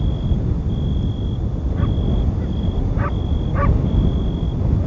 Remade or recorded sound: recorded